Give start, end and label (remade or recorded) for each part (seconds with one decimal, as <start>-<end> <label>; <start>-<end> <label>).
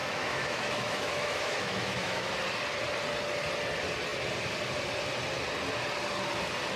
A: 0.0-2.3 remade; 2.3-6.8 recorded